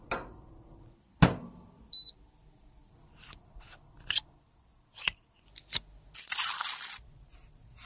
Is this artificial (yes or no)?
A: no